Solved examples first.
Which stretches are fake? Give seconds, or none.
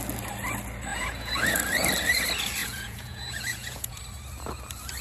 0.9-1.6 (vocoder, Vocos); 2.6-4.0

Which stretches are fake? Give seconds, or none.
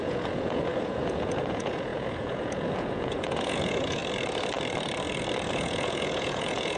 0.0-4.0 (vocoder, Vocos); 5.5-6.8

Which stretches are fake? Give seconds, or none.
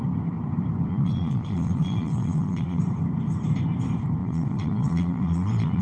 0.9-2.8 (vocoder, Vocos); 4.2-5.8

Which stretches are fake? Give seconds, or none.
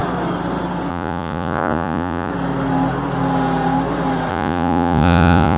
0.9-2.3 (vocoder, Vocos); 4.3-5.6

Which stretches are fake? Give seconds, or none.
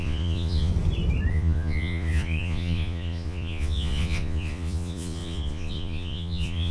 0.0-0.7 (vocoder, Vocos); 1.3-6.7